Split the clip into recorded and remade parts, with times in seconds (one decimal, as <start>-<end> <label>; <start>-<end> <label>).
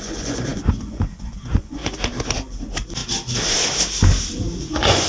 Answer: 0.0-1.8 remade; 1.8-4.6 recorded; 4.6-5.1 remade